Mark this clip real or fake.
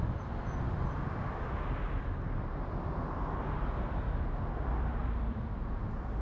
real